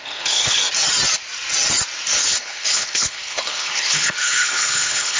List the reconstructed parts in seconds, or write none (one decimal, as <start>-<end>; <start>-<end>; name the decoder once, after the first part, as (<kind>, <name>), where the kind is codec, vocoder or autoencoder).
0.0-0.6 (codec, HILCodec); 2.2-5.2